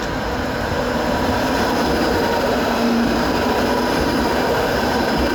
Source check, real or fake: fake